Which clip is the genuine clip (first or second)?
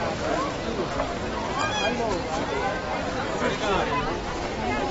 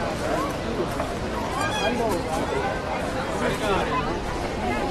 first